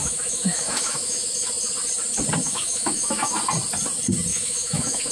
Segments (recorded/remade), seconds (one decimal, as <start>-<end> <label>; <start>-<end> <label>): 0.0-1.3 remade; 1.3-2.4 recorded; 2.4-3.4 remade; 3.4-4.3 recorded; 4.3-5.1 remade